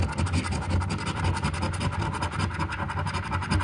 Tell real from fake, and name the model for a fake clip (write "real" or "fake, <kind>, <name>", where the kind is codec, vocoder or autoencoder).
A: real